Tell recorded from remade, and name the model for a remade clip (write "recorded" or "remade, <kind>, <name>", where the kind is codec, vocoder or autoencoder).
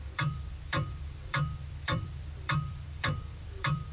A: remade, vocoder, BigVGAN v2